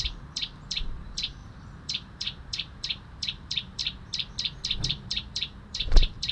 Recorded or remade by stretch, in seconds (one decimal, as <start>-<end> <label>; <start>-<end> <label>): 0.0-3.8 remade; 3.8-4.8 recorded; 4.8-6.3 remade